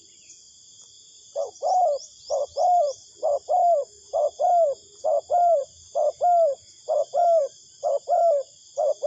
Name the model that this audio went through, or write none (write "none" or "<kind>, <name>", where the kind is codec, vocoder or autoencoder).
vocoder, BigVGAN v2